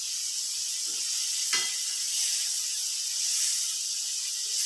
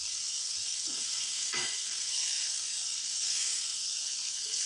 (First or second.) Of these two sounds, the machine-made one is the second